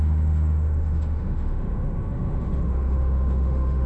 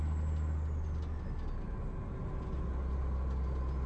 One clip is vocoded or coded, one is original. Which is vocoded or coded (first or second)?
first